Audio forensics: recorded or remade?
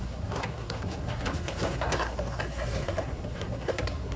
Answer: remade